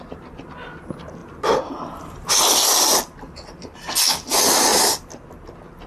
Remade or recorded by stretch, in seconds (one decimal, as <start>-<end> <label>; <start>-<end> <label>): 0.0-1.2 recorded; 1.2-2.3 remade; 2.3-5.9 recorded